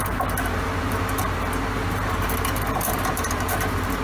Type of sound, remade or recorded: recorded